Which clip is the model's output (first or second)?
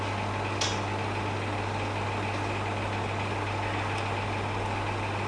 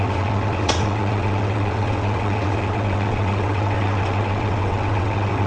second